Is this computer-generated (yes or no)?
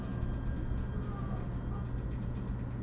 no